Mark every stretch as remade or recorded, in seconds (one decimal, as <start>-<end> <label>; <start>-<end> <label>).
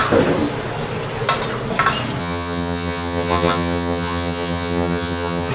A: 0.0-2.2 recorded; 2.2-5.5 remade